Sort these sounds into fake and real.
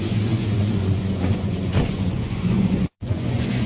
fake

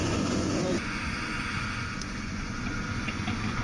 fake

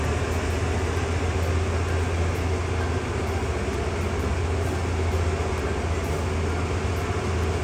real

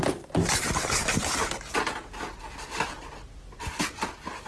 real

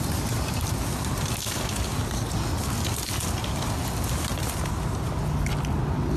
real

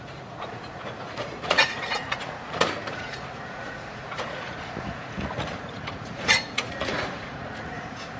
fake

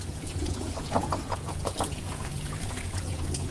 fake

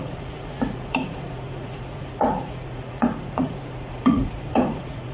fake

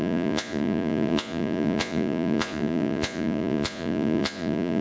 fake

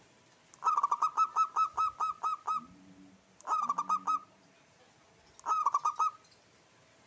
real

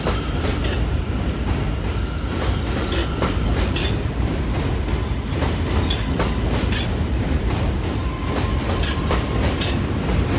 real